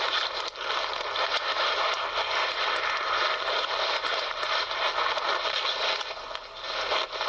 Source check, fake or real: real